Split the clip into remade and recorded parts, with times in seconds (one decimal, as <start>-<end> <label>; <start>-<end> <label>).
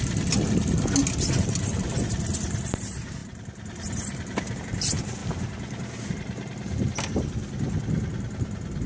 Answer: 0.0-8.9 recorded